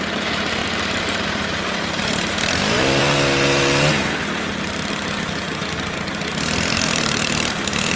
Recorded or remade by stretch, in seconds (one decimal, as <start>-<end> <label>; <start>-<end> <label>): 0.0-0.6 recorded; 0.6-2.5 remade; 2.5-6.3 recorded; 6.3-8.0 remade